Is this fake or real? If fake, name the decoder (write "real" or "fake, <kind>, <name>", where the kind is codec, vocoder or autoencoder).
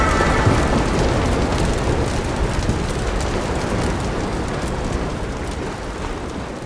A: real